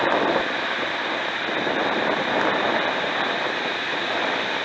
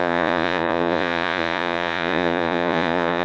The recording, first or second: first